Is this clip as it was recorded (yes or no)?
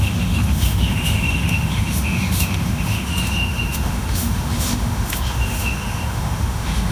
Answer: no